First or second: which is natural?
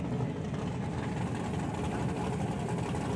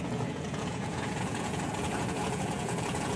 first